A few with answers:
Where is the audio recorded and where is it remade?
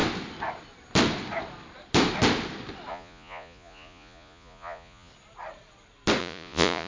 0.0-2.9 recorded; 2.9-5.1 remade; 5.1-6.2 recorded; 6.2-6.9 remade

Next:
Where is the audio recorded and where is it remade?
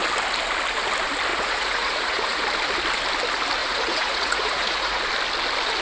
0.0-1.3 recorded; 1.3-2.4 remade; 2.4-3.6 recorded; 3.6-5.0 remade; 5.0-5.8 recorded